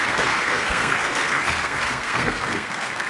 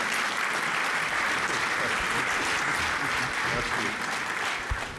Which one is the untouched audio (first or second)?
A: second